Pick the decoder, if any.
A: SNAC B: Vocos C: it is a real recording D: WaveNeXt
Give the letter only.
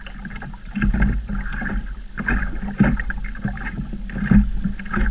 C